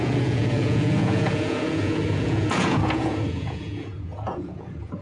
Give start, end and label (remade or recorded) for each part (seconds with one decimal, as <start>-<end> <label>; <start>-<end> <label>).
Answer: 0.0-5.0 remade